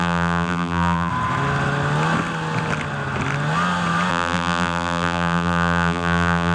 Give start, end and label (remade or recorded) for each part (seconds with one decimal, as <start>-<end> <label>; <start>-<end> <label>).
0.0-1.1 remade; 1.1-4.1 recorded; 4.1-6.5 remade

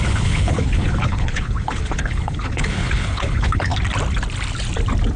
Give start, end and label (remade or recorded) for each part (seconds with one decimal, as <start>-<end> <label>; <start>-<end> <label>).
0.0-3.7 remade; 3.7-5.2 recorded

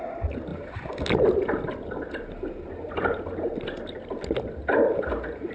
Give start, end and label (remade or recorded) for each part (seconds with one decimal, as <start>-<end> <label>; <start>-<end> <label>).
0.0-5.5 recorded

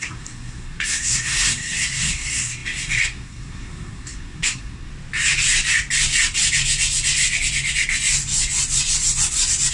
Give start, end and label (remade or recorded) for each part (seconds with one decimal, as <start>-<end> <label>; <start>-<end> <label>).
0.0-4.9 remade; 4.9-9.7 recorded

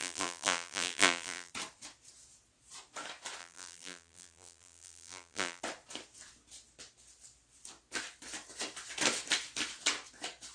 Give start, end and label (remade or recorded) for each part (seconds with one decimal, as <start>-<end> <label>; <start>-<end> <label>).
0.0-1.5 remade; 1.5-3.4 recorded; 3.4-5.6 remade; 5.6-10.5 recorded

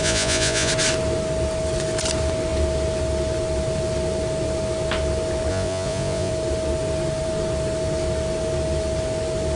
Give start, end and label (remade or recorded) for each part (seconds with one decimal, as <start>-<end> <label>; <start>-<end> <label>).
0.0-0.7 remade; 0.7-5.5 recorded; 5.5-6.3 remade; 6.3-9.6 recorded

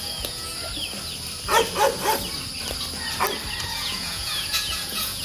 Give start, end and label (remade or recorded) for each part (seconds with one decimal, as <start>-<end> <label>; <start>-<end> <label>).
0.0-0.5 remade; 0.5-3.6 recorded; 3.6-5.2 remade

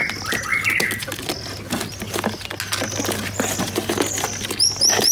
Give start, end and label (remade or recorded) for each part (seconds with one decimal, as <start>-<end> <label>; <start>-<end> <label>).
0.0-5.1 recorded